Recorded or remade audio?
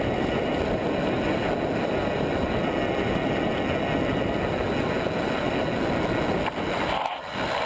recorded